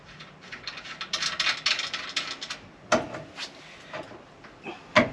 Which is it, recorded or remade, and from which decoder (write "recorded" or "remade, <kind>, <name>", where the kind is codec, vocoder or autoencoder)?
recorded